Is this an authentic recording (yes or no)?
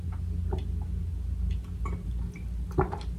yes